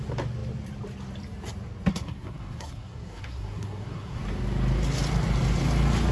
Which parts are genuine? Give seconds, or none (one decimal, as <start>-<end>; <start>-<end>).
0.0-1.9; 4.2-6.1